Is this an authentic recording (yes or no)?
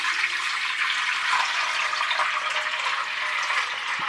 yes